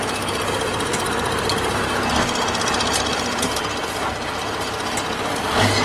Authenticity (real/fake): real